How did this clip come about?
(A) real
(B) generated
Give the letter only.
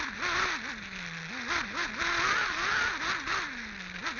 A